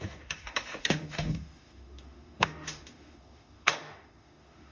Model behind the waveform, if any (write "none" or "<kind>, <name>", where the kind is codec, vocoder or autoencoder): autoencoder, DAC-VAE